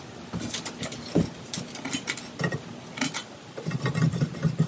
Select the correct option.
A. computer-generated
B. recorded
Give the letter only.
B